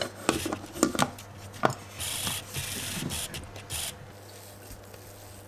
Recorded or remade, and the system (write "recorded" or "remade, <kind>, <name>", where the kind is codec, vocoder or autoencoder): recorded